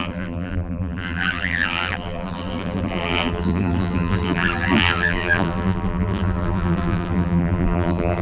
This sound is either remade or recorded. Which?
remade